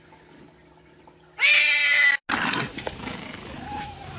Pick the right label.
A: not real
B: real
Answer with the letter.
B